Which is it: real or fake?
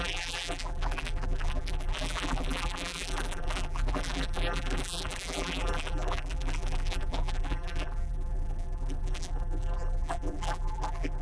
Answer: fake